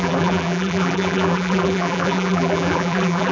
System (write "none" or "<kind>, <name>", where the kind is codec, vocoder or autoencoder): vocoder, BigVGAN v2